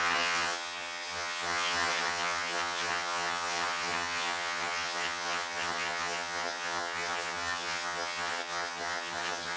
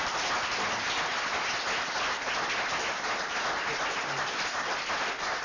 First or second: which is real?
second